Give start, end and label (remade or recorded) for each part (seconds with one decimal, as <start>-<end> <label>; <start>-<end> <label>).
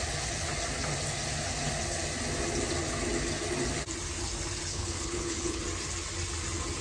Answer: 0.0-4.7 recorded; 4.7-5.6 remade; 5.6-6.8 recorded